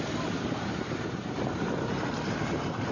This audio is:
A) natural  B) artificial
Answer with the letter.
B